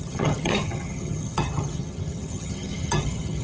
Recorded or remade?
remade